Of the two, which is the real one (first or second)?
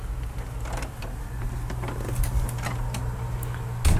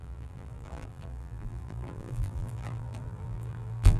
first